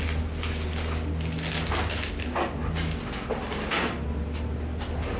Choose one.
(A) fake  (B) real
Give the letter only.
B